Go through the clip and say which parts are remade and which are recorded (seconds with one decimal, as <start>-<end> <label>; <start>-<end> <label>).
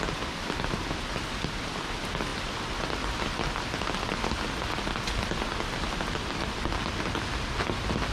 0.0-8.1 recorded